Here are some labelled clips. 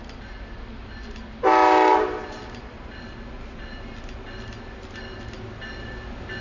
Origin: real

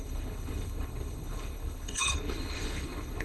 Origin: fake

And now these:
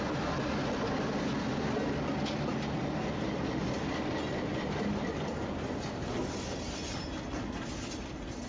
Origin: real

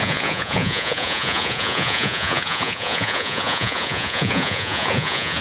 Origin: fake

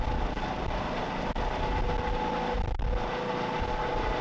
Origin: real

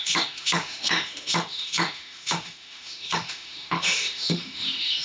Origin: fake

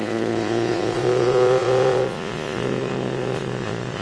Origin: fake